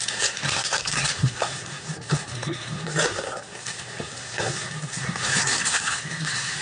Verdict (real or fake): fake